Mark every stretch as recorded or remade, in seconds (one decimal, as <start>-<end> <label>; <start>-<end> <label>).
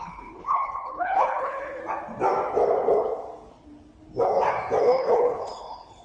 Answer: 0.0-1.8 remade; 1.8-4.8 recorded; 4.8-6.0 remade